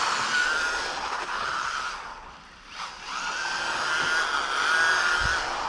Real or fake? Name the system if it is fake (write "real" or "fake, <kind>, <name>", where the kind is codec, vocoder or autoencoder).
real